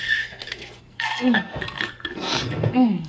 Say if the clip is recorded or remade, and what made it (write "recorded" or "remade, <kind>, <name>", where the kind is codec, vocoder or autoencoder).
remade, codec, SNAC